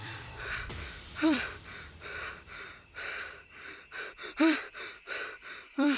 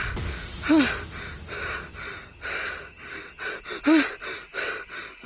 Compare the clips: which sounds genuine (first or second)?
second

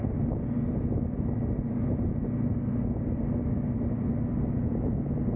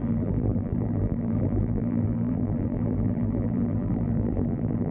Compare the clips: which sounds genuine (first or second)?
first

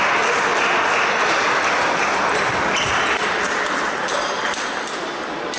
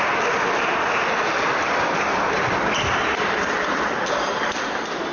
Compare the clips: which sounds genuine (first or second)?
first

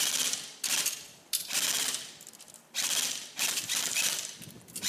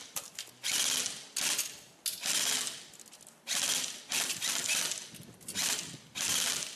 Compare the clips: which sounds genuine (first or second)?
second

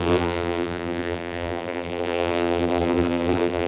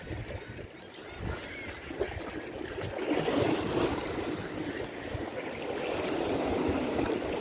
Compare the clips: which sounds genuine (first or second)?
second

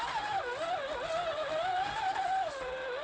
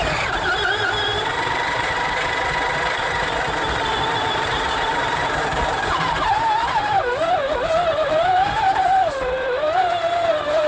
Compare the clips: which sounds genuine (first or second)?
first